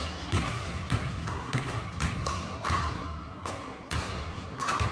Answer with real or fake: fake